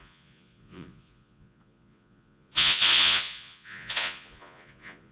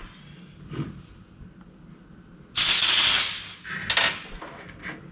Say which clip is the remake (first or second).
first